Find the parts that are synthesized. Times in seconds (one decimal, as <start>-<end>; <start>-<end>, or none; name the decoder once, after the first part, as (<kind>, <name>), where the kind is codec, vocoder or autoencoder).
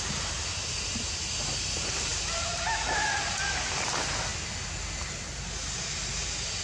2.1-3.1 (vocoder, BigVGAN v2)